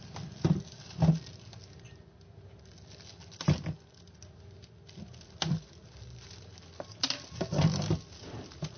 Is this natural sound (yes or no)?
yes